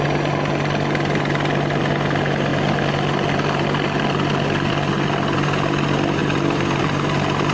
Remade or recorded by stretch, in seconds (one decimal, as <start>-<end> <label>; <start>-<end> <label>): 0.0-7.5 recorded